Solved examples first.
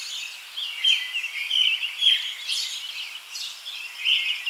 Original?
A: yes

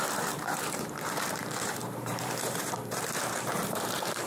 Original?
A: no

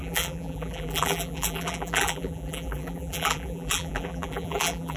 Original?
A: no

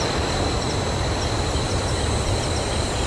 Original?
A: yes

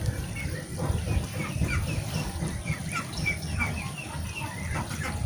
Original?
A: yes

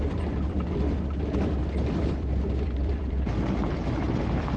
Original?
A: no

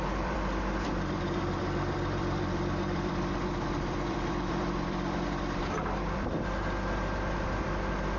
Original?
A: no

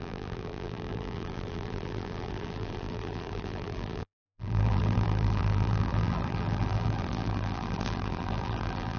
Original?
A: no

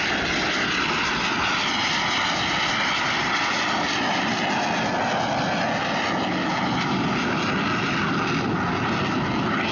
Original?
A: yes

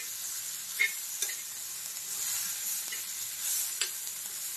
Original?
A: yes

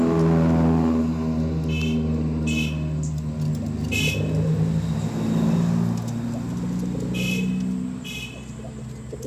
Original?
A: yes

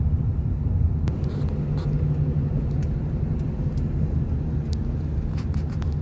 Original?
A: yes